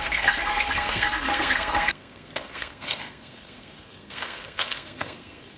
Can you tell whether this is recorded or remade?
remade